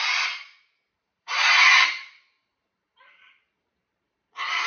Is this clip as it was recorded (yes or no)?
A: no